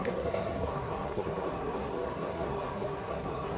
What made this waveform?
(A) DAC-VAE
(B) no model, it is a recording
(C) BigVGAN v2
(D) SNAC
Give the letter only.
D